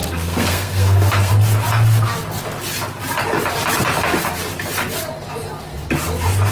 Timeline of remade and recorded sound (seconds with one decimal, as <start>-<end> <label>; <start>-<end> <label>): 0.0-1.3 remade; 1.3-6.5 recorded